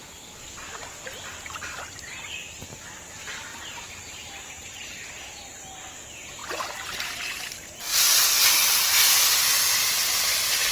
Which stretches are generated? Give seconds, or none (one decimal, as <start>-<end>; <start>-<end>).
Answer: 3.5-5.1; 7.9-8.5